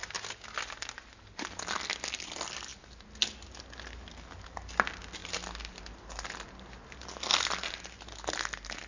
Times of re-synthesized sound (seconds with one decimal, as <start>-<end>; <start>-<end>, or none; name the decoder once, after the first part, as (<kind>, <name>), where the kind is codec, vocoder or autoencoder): none

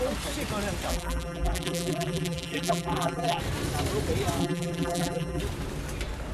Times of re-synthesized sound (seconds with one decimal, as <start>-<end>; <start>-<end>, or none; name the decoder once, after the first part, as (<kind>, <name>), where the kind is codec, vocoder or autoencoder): 0.9-3.4 (vocoder, BigVGAN v2); 4.4-5.4

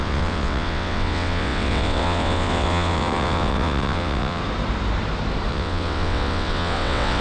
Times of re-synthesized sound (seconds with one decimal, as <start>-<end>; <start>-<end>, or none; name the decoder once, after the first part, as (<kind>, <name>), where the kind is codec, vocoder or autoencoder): 0.0-4.4 (vocoder, WaveNeXt); 5.5-7.2

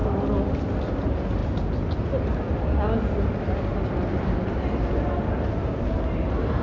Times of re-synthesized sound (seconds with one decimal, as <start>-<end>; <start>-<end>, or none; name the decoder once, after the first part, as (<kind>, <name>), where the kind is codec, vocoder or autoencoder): none

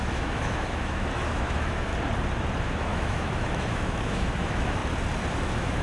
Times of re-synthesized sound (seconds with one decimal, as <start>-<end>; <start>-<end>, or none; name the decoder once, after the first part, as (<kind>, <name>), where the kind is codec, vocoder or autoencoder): 0.0-1.9 (autoencoder, DAC-VAE); 2.6-4.8; 5.3-5.8

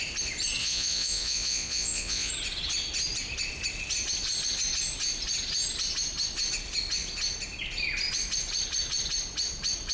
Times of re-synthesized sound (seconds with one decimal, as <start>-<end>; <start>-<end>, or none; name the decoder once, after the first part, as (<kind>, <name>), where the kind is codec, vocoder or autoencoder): 0.6-2.3 (vocoder, Vocos)

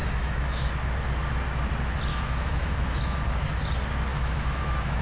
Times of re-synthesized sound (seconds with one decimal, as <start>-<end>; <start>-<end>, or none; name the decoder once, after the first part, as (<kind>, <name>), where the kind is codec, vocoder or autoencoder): 0.0-0.7 (autoencoder, DAC-VAE); 2.1-3.5; 4.1-5.0